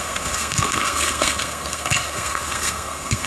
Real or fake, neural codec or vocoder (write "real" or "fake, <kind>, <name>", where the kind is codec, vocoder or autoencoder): fake, codec, SNAC